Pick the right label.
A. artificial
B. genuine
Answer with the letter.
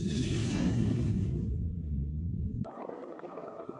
A